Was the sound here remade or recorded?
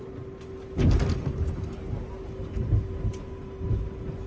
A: recorded